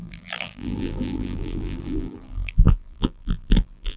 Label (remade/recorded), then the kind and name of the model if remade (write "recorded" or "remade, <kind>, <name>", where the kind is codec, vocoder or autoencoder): remade, vocoder, BigVGAN v2